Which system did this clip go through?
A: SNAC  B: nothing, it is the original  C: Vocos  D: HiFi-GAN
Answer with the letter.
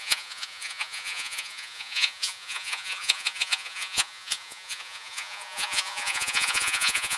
C